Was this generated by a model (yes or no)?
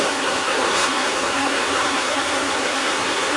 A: yes